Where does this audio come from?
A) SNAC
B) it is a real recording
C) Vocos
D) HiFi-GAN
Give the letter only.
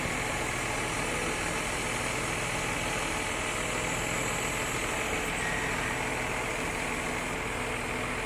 B